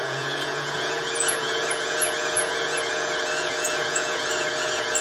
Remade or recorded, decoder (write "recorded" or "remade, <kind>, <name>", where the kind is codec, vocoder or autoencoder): remade, vocoder, Vocos